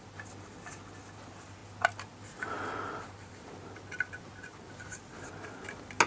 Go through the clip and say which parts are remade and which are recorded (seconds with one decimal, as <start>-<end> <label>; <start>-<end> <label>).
0.0-6.1 recorded